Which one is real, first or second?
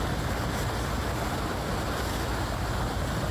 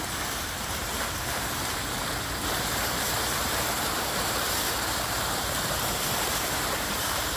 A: first